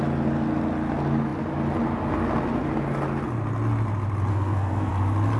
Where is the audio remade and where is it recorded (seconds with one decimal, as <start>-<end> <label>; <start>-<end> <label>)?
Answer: 0.0-4.3 recorded; 4.3-4.9 remade; 4.9-5.4 recorded